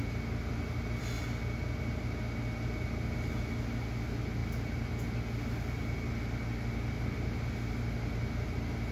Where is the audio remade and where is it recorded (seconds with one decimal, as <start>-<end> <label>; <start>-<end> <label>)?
0.0-8.9 recorded

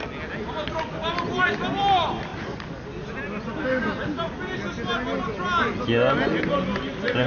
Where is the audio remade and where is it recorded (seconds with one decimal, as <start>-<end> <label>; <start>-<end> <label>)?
0.0-7.3 recorded

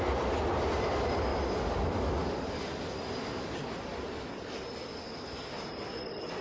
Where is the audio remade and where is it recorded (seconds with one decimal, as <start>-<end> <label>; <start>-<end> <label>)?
0.0-6.4 recorded

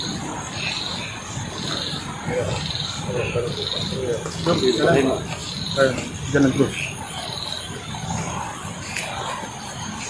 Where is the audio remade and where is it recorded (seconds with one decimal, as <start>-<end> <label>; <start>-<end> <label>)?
0.0-10.1 recorded

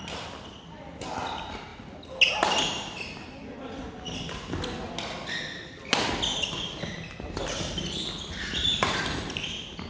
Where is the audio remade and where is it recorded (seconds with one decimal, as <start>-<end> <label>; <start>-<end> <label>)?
0.0-9.9 recorded

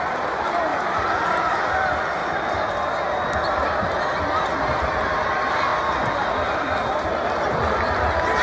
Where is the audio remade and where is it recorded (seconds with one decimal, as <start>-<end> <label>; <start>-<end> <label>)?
0.0-0.7 recorded; 0.7-1.7 remade; 1.7-8.4 recorded

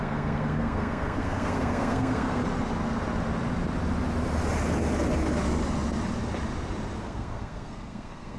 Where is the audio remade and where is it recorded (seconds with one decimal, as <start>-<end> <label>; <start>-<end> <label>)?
0.0-2.4 remade; 2.4-7.0 recorded; 7.0-8.4 remade